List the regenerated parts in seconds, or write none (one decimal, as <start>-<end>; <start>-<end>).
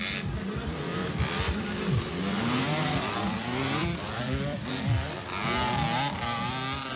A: 0.9-4.7